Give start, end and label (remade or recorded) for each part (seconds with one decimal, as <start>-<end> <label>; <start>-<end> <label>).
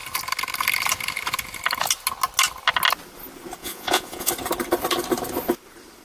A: 0.0-3.6 recorded; 3.6-4.3 remade; 4.3-6.0 recorded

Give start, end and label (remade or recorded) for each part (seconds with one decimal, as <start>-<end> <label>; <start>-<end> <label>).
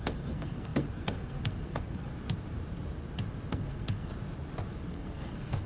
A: 0.0-2.1 remade; 2.1-3.5 recorded; 3.5-4.1 remade; 4.1-4.9 recorded; 4.9-5.7 remade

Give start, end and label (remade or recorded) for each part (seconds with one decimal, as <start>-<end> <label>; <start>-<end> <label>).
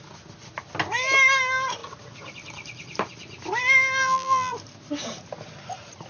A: 0.0-4.0 recorded; 4.0-4.5 remade; 4.5-6.1 recorded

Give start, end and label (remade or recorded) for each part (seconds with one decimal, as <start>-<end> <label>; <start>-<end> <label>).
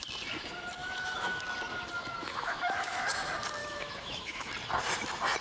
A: 0.0-0.8 recorded; 0.8-1.4 remade; 1.4-2.2 recorded; 2.2-3.0 remade; 3.0-3.6 recorded; 3.6-4.5 remade; 4.5-5.4 recorded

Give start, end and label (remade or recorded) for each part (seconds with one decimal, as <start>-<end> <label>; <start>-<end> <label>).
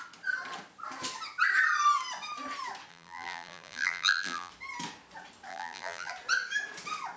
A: 0.0-2.9 recorded; 2.9-4.5 remade; 4.5-5.5 recorded; 5.5-6.1 remade; 6.1-7.2 recorded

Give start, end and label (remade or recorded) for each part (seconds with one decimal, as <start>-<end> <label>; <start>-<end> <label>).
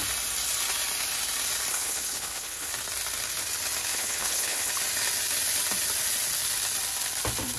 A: 0.0-1.7 recorded; 1.7-2.7 remade; 2.7-3.9 recorded; 3.9-4.7 remade; 4.7-7.6 recorded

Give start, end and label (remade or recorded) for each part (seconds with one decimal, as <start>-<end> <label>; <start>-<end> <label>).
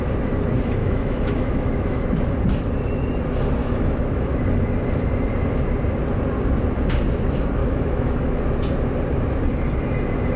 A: 0.0-0.8 recorded; 0.8-2.0 remade; 2.0-3.6 recorded; 3.6-4.4 remade; 4.4-7.6 recorded; 7.6-8.4 remade; 8.4-10.4 recorded